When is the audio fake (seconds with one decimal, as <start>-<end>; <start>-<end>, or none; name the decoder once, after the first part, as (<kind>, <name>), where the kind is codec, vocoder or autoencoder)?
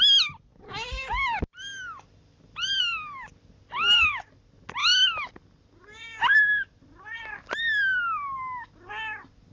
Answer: none